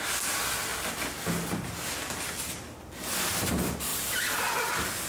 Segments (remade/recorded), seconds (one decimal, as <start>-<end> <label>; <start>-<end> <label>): 0.0-3.9 recorded; 3.9-5.1 remade